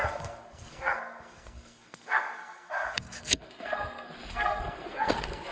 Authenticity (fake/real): fake